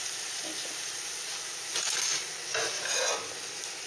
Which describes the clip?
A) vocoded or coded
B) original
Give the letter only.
B